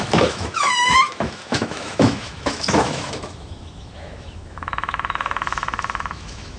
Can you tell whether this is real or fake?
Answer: fake